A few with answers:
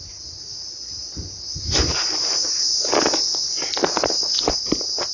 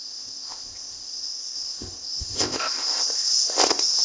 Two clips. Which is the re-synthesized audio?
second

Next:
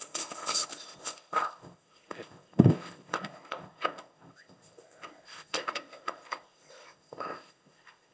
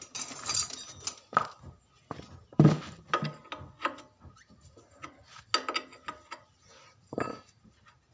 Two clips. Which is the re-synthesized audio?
first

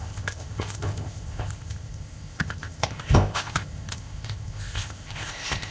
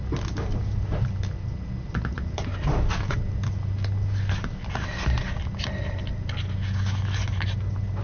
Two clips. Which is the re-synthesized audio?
first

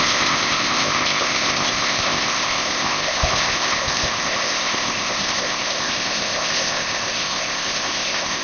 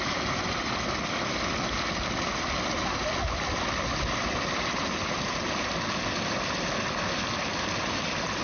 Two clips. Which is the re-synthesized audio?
first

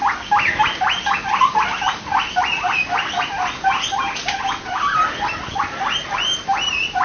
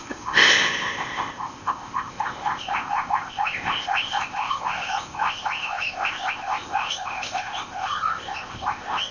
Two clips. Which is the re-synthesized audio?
second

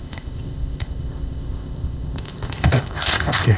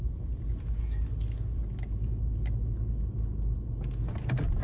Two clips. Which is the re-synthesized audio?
first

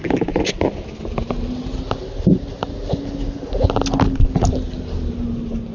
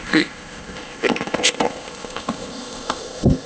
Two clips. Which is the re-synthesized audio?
second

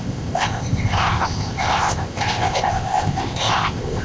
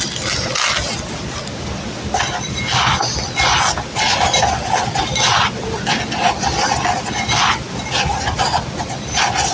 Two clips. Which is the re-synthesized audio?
first